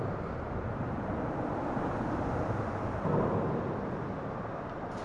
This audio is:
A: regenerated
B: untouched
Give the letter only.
B